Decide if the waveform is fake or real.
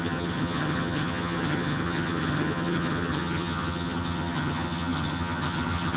fake